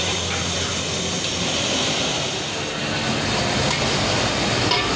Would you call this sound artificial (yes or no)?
no